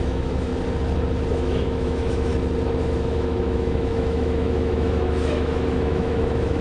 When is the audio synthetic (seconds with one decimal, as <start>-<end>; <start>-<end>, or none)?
0.0-0.5; 1.3-2.3; 2.8-6.6